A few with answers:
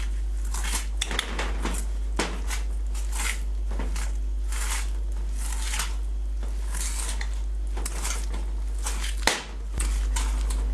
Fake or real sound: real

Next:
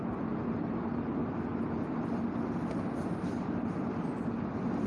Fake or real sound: real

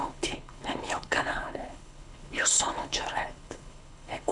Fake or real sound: fake